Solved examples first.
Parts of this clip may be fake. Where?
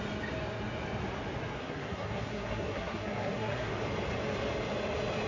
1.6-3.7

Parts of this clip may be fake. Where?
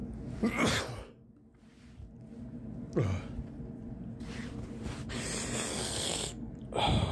5.7-6.5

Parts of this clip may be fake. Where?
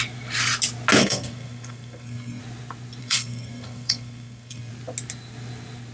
1.0-2.4; 3.0-4.7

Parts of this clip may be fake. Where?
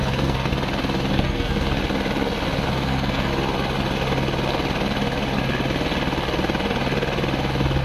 0.0-0.5; 1.1-1.8; 2.7-3.3